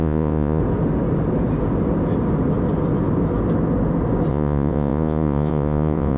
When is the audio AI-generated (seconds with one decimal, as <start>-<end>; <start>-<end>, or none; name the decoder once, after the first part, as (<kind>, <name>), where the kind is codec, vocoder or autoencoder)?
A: 0.0-0.6 (vocoder, Vocos); 4.3-6.2